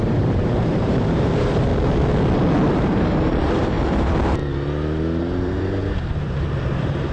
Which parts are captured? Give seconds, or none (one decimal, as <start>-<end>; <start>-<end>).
1.7-2.7; 4.4-5.2